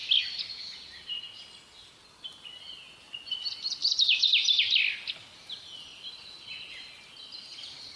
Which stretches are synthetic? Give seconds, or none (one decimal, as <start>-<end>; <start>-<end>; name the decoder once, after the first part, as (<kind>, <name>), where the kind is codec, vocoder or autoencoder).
3.8-4.6 (vocoder, BigVGAN v2)